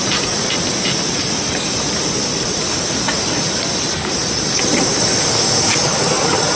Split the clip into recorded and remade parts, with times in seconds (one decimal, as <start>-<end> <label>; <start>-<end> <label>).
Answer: 0.0-6.6 recorded